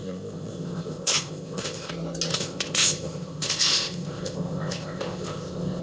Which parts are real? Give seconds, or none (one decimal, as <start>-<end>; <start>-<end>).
1.9-2.3